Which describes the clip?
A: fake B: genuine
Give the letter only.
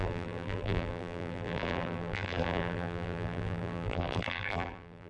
A